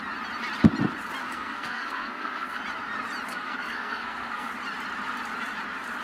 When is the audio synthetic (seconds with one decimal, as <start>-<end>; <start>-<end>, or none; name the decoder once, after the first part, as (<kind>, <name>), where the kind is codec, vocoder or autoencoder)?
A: 1.2-2.6 (codec, SNAC); 3.3-4.5